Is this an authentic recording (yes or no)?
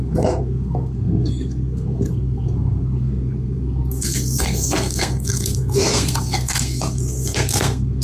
no